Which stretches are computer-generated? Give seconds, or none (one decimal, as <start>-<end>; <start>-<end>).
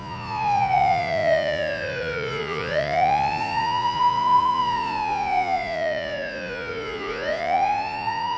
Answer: 0.0-8.4